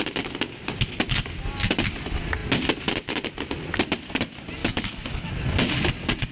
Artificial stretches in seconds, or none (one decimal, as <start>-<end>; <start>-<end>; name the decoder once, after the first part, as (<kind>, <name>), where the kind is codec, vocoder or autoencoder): 4.6-5.3 (autoencoder, DAC-VAE)